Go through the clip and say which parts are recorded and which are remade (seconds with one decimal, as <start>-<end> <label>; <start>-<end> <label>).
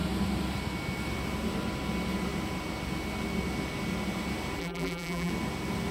0.0-4.6 recorded; 4.6-5.3 remade; 5.3-5.9 recorded